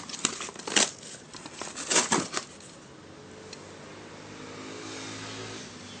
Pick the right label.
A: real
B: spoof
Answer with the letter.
A